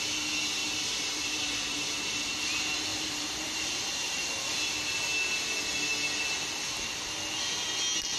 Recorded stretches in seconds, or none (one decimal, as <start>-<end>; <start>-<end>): 0.0-0.6; 2.4-2.9; 4.2-8.2